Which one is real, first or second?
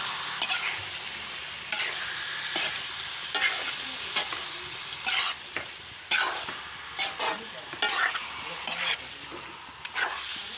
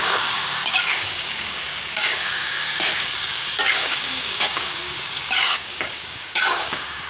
first